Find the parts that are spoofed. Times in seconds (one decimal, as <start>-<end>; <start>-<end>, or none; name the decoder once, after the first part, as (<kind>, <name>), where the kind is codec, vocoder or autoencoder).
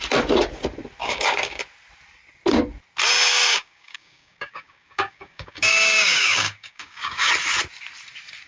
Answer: 1.0-1.6 (codec, DAC); 3.3-7.3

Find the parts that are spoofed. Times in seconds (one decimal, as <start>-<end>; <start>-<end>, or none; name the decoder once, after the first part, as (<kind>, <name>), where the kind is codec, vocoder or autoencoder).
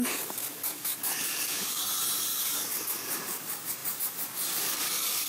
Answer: 0.0-1.8 (codec, DAC); 2.3-5.3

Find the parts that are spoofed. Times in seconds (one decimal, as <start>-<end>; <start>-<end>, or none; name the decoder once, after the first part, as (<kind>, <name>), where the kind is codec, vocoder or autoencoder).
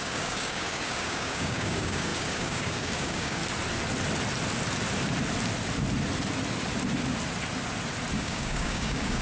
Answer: 0.0-3.4 (codec, DAC); 8.2-9.2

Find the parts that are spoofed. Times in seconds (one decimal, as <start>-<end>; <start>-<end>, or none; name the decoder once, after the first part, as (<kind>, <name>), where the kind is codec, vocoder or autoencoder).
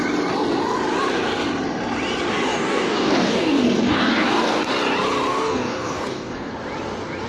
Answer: 2.3-4.6 (codec, DAC); 5.3-6.5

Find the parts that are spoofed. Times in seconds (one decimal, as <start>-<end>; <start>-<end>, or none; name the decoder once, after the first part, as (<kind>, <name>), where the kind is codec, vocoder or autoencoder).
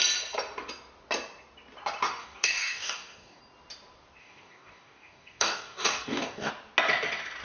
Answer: 2.2-3.4 (codec, DAC); 4.2-6.5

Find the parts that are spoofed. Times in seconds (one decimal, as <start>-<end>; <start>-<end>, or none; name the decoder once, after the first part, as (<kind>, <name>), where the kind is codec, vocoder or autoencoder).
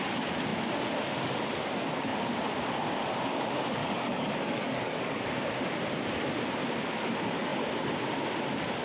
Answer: 3.8-5.3 (codec, DAC)